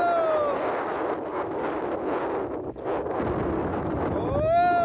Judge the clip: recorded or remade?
recorded